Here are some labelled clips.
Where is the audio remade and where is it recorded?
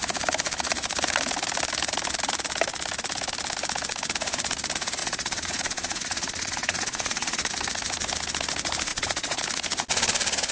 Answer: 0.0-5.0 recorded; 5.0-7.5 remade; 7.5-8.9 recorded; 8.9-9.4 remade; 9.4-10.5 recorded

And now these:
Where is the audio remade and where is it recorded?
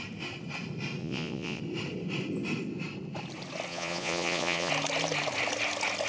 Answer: 0.0-1.0 recorded; 1.0-1.6 remade; 1.6-3.7 recorded; 3.7-4.7 remade; 4.7-6.1 recorded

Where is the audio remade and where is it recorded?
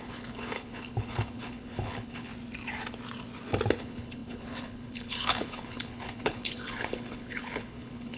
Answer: 0.0-2.3 remade; 2.3-3.8 recorded; 3.8-8.2 remade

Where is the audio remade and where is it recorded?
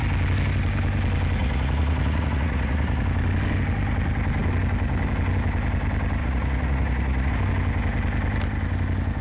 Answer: 0.0-1.4 recorded; 1.4-3.0 remade; 3.0-6.2 recorded; 6.2-7.3 remade; 7.3-9.2 recorded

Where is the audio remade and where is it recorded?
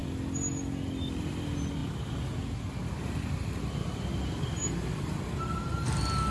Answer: 0.0-6.3 recorded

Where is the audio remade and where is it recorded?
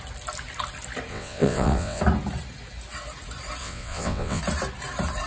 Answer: 0.0-1.1 recorded; 1.1-2.0 remade; 2.0-3.6 recorded; 3.6-4.4 remade; 4.4-5.3 recorded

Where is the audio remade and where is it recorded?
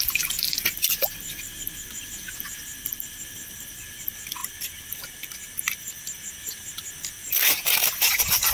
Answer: 0.0-4.4 remade; 4.4-4.9 recorded; 4.9-8.5 remade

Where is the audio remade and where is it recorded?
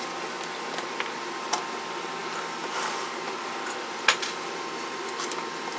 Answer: 0.0-5.8 recorded